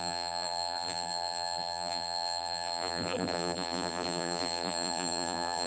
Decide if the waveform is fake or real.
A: fake